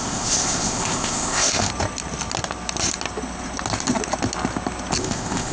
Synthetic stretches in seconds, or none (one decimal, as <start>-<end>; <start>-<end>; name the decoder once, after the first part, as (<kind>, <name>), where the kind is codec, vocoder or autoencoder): 0.0-1.7 (codec, ZipCodec); 5.0-5.5